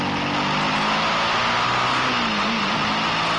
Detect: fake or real real